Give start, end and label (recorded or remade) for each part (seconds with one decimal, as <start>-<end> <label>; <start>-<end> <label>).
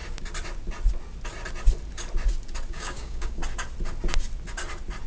0.0-2.7 recorded; 2.7-3.4 remade; 3.4-5.1 recorded